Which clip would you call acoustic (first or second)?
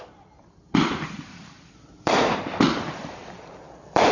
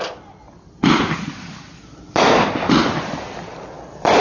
second